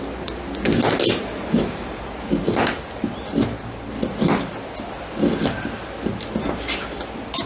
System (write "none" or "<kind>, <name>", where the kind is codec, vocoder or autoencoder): none